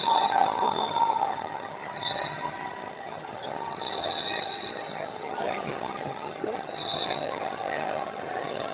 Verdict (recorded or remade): remade